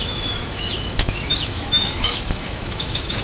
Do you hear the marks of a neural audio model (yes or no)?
yes